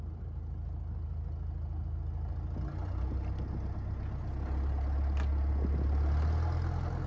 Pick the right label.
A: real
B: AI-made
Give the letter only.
A